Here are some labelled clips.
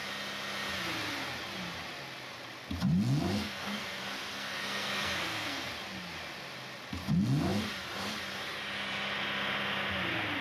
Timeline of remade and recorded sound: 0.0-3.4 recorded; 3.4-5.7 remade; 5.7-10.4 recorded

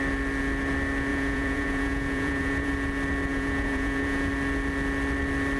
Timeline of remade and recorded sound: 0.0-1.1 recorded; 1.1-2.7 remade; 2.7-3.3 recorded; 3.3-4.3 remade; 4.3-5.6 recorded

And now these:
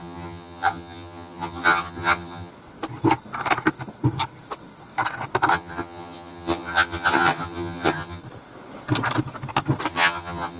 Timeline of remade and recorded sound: 0.0-2.5 remade; 2.5-5.5 recorded; 5.5-8.2 remade; 8.2-9.9 recorded; 9.9-10.6 remade

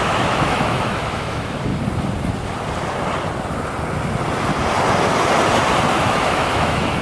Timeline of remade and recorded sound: 0.0-1.7 remade; 1.7-5.9 recorded; 5.9-7.0 remade

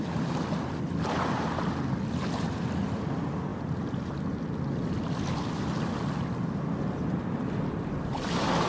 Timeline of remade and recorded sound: 0.0-8.7 recorded

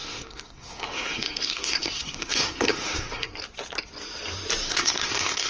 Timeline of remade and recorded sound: 0.0-3.3 remade; 3.3-4.6 recorded; 4.6-5.5 remade